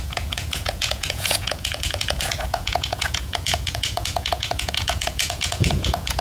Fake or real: fake